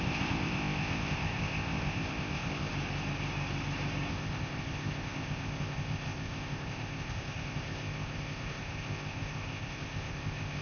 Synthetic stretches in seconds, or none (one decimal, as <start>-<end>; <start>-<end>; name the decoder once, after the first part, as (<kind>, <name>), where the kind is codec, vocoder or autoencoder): 0.0-2.7 (codec, ZipCodec); 4.1-10.6